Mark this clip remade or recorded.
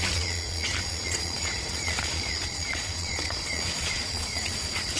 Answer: remade